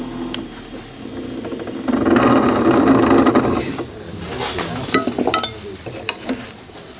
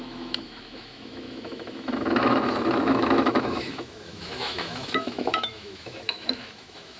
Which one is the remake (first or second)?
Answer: second